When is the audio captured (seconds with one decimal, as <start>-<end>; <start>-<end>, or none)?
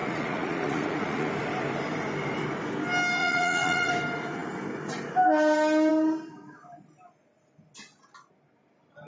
1.3-3.2; 3.9-9.1